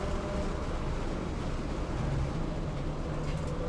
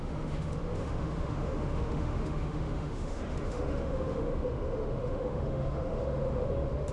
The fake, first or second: second